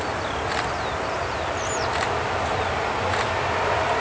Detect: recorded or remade recorded